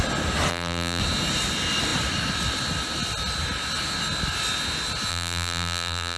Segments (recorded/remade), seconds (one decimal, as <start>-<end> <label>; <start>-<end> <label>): 0.0-0.5 recorded; 0.5-1.0 remade; 1.0-5.1 recorded; 5.1-6.2 remade